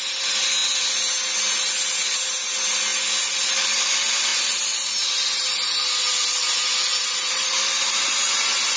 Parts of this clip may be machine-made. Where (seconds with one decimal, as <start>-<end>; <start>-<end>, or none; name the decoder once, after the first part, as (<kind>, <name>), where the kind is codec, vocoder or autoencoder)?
none